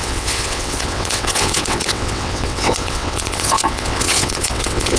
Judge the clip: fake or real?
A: fake